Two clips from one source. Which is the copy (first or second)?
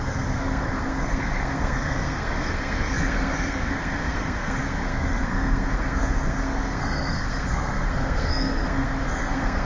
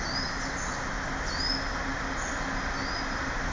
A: first